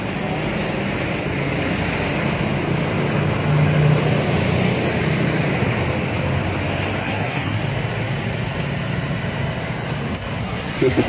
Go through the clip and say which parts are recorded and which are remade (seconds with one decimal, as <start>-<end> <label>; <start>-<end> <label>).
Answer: 0.0-7.0 recorded; 7.0-7.6 remade; 7.6-10.4 recorded; 10.4-11.1 remade